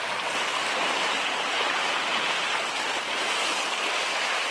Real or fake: real